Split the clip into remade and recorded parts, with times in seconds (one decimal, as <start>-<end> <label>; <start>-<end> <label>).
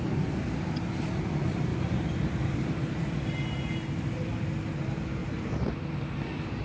0.0-1.7 recorded; 1.7-2.3 remade; 2.3-5.2 recorded; 5.2-6.0 remade; 6.0-6.6 recorded